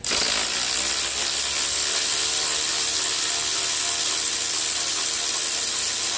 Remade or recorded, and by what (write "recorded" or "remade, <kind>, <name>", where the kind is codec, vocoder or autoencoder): recorded